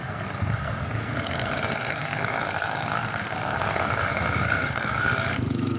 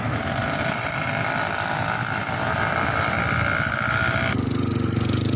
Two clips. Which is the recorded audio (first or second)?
second